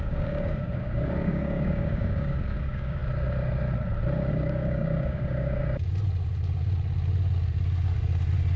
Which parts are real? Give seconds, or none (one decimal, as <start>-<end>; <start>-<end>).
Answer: 3.0-4.3; 5.6-8.6